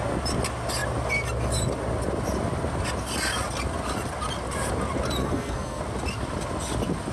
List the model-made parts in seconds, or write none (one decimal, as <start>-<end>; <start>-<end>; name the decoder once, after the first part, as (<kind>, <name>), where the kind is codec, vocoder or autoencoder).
5.2-5.8 (codec, SNAC)